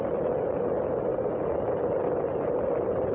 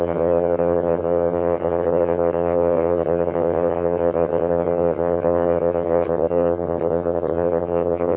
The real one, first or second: first